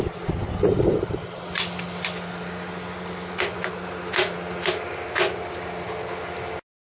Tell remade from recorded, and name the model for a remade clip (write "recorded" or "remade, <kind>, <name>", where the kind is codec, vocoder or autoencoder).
recorded